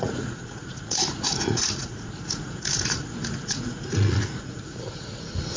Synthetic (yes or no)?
yes